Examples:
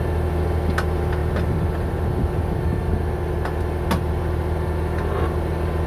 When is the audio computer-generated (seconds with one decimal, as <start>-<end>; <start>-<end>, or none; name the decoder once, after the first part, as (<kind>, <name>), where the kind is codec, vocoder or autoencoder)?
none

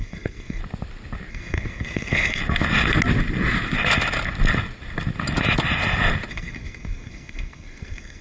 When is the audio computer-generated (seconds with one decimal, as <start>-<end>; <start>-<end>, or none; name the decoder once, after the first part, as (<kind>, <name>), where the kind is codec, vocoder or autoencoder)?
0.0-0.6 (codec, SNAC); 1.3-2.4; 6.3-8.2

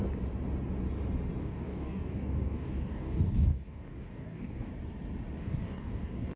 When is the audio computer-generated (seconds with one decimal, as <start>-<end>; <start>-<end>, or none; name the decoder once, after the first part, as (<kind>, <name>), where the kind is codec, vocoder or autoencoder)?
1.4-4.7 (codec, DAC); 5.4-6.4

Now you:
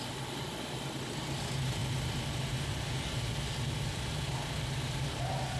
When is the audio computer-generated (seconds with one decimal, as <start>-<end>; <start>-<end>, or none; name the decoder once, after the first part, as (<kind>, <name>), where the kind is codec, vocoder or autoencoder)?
none